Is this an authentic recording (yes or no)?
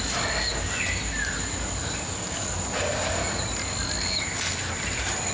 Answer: yes